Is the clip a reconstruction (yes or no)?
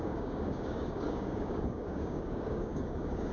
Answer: yes